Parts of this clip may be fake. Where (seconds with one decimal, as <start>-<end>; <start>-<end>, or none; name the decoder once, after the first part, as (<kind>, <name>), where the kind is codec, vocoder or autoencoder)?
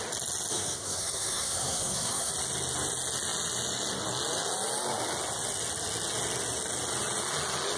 0.5-2.3 (codec, SNAC)